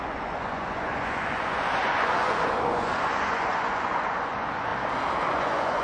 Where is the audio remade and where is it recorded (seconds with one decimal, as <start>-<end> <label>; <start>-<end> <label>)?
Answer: 0.0-4.7 remade; 4.7-5.3 recorded; 5.3-5.8 remade